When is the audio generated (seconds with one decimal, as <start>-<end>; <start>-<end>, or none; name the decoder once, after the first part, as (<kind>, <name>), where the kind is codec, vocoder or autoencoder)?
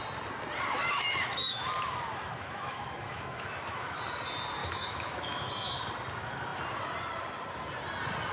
0.8-4.0 (autoencoder, DAC-VAE); 4.6-5.8